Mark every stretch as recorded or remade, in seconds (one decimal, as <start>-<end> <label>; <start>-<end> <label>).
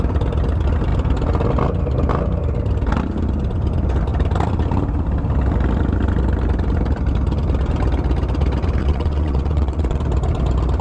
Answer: 0.0-8.8 recorded; 8.8-10.0 remade; 10.0-10.8 recorded